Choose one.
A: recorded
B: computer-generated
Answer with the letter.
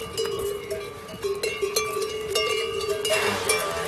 A